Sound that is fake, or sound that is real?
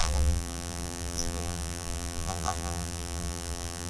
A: fake